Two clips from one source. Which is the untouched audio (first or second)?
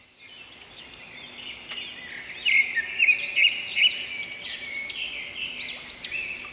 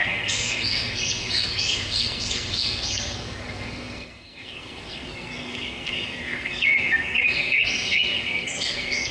first